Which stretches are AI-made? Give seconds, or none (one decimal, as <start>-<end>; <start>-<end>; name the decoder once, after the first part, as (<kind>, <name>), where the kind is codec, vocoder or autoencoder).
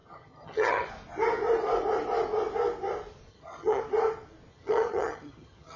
0.0-0.9 (vocoder, HiFi-GAN); 3.3-3.8; 4.5-5.8